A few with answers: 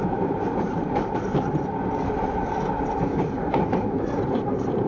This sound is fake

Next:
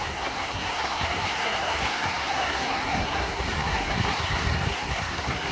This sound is fake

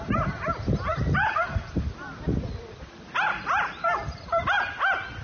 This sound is real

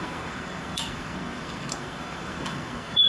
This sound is fake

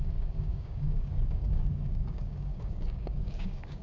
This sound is fake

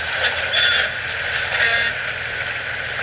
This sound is real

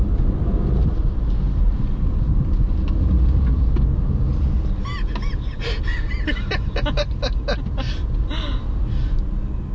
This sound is real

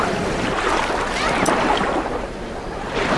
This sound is real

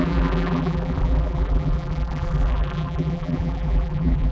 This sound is fake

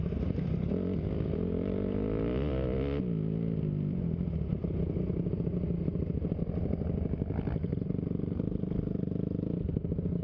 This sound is real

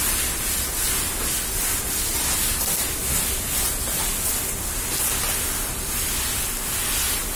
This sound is real